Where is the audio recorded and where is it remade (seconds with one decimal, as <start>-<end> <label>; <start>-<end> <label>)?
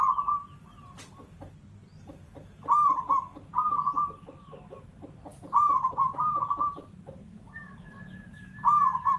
0.0-7.2 recorded; 7.2-7.9 remade; 7.9-9.2 recorded